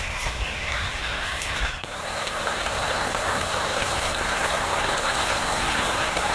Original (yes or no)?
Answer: no